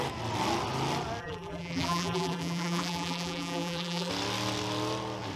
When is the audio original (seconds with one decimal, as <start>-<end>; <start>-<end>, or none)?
0.0-1.2; 4.1-5.4